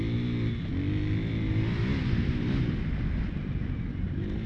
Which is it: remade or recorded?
recorded